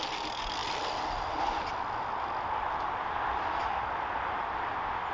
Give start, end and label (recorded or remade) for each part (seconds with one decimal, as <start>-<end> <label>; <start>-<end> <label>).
0.0-5.1 recorded